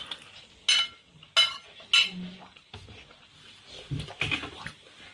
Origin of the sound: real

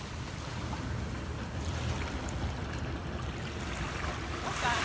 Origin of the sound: real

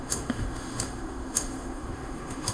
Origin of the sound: fake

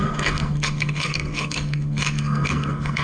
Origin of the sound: fake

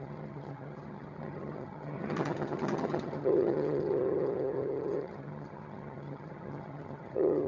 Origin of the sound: fake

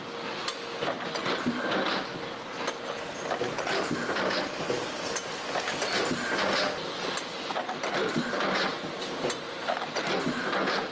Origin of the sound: real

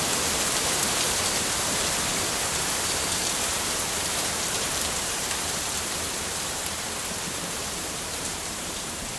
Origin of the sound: fake